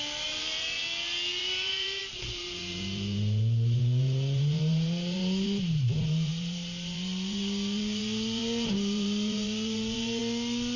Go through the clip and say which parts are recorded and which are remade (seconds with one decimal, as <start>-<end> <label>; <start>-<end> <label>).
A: 0.0-0.8 remade; 0.8-1.4 recorded; 1.4-10.2 remade; 10.2-10.8 recorded